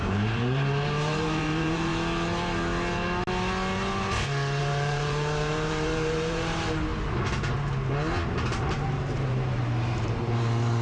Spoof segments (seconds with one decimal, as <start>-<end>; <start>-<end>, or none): 0.0-1.9; 4.6-6.9; 8.3-10.8